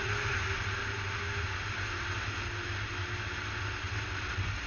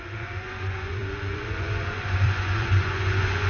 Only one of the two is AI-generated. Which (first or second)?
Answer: second